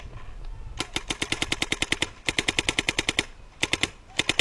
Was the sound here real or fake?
real